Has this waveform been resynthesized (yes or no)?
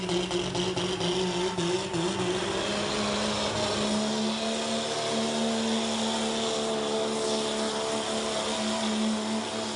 no